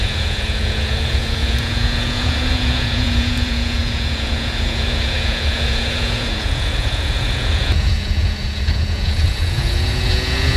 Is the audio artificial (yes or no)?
yes